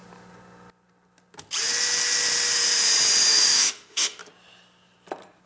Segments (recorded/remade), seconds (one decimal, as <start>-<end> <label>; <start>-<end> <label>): 0.0-3.3 recorded; 3.3-4.2 remade; 4.2-5.5 recorded